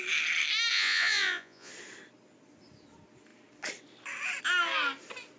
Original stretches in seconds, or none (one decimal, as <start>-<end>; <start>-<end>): 0.0-0.7; 1.7-5.4